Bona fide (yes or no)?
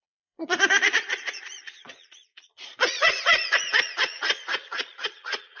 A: no